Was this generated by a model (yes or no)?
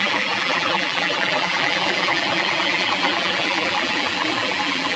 yes